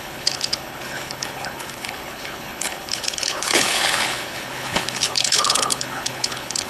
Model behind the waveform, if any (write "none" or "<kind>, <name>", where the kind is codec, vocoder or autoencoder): codec, HILCodec